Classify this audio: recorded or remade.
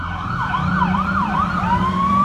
remade